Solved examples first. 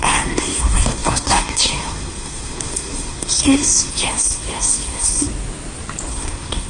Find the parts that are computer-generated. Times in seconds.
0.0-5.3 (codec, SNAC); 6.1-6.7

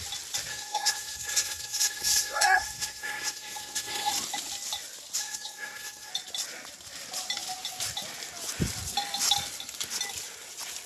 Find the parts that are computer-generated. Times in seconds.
0.5-4.1 (codec, SNAC); 5.2-6.1

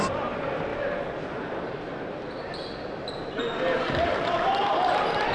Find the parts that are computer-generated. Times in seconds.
0.0-0.7 (vocoder, BigVGAN v2); 3.9-5.3

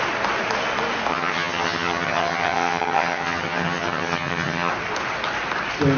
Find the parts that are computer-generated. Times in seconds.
1.1-4.7 (vocoder, HiFi-GAN)